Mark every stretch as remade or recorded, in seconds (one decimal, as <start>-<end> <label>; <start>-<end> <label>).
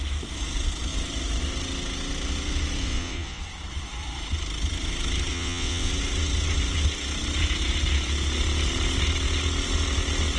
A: 0.0-2.8 recorded; 2.8-3.4 remade; 3.4-5.3 recorded; 5.3-5.9 remade; 5.9-10.4 recorded